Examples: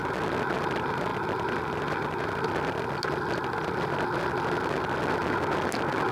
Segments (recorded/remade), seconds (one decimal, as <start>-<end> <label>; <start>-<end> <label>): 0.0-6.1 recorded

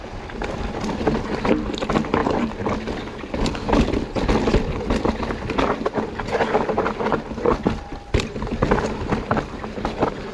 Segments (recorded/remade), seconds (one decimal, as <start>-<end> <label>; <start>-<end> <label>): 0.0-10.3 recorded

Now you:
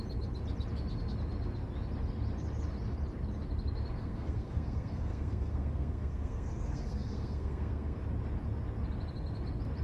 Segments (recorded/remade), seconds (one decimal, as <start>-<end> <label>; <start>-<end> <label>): 0.0-4.0 recorded; 4.0-8.0 remade; 8.0-9.8 recorded

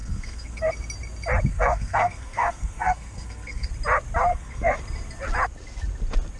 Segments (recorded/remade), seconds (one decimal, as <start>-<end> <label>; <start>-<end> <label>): 0.0-0.7 remade; 0.7-1.5 recorded; 1.5-3.7 remade; 3.7-4.3 recorded; 4.3-4.8 remade; 4.8-6.4 recorded